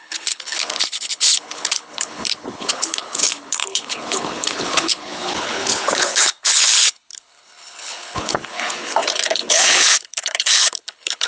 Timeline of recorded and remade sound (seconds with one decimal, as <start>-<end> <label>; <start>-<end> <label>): 0.0-11.3 remade